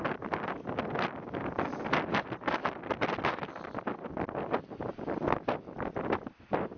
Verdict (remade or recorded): recorded